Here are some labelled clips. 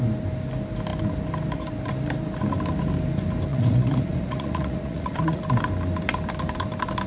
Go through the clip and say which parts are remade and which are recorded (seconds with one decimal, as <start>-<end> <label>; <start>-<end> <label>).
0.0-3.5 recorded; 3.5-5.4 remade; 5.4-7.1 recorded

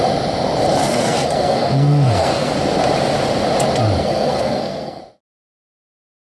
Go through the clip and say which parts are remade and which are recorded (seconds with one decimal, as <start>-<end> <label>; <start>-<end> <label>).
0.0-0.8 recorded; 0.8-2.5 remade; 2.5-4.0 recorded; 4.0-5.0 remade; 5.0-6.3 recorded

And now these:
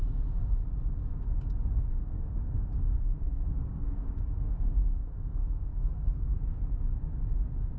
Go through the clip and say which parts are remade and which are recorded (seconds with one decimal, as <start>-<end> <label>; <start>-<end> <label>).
0.0-1.9 recorded; 1.9-6.6 remade; 6.6-7.8 recorded

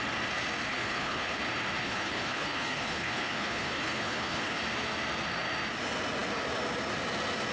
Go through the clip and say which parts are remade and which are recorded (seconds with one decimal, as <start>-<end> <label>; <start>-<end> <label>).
0.0-0.7 recorded; 0.7-1.4 remade; 1.4-1.8 recorded; 1.8-4.6 remade; 4.6-7.5 recorded